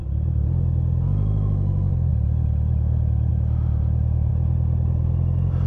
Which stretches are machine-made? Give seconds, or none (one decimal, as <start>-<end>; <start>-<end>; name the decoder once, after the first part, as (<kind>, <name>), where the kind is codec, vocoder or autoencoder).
none